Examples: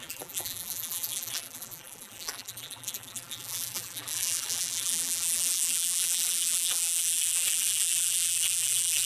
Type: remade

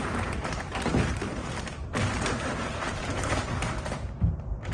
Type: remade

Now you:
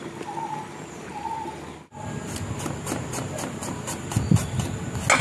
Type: recorded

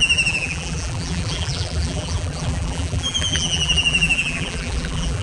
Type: remade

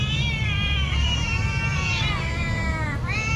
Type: recorded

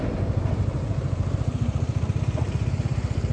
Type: remade